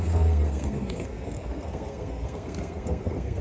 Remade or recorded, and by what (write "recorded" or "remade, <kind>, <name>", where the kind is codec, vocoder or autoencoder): remade, codec, SNAC